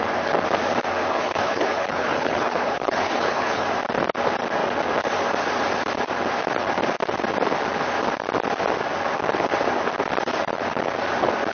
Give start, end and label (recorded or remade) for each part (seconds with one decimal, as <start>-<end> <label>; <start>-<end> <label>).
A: 0.0-1.1 recorded; 1.1-3.7 remade; 3.7-11.5 recorded